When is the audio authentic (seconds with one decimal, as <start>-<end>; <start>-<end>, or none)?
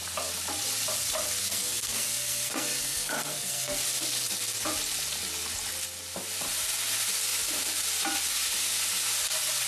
0.0-1.4; 3.8-9.7